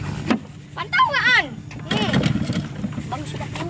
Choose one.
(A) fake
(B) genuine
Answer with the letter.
B